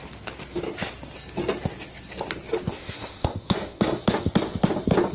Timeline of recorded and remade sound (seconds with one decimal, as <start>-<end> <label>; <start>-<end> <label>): 0.0-2.7 recorded; 2.7-4.0 remade; 4.0-5.1 recorded